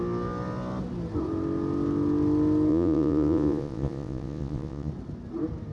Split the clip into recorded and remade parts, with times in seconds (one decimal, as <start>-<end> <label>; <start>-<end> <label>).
0.0-2.7 recorded; 2.7-4.9 remade; 4.9-5.7 recorded